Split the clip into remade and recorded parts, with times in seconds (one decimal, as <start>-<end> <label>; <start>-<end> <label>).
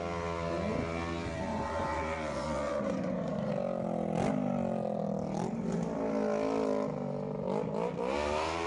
0.0-1.5 recorded; 1.5-3.5 remade; 3.5-8.7 recorded